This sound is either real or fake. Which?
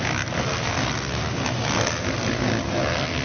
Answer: real